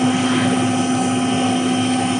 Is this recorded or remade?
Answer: recorded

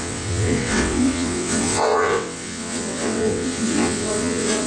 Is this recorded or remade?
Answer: remade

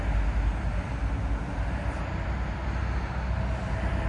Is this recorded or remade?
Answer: recorded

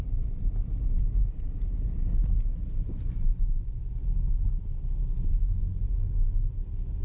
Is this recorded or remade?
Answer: recorded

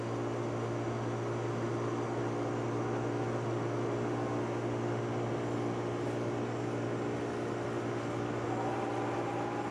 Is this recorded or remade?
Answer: recorded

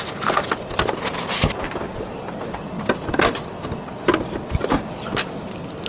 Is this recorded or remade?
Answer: recorded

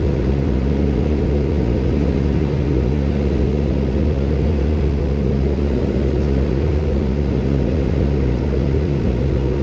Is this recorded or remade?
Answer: remade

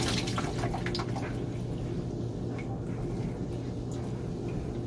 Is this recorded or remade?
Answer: recorded